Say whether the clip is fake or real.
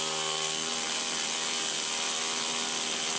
real